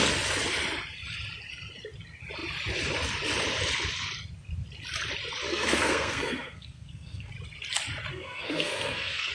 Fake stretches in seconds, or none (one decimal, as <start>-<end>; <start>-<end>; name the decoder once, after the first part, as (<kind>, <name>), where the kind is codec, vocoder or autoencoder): 5.5-7.3 (codec, SNAC); 8.1-9.3